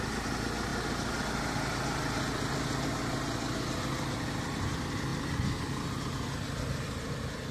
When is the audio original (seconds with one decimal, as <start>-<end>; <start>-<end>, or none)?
0.0-7.5